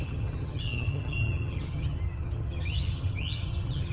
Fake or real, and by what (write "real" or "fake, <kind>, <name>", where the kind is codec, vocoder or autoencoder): fake, vocoder, HiFi-GAN